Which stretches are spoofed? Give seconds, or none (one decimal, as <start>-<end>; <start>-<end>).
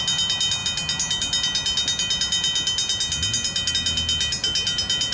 none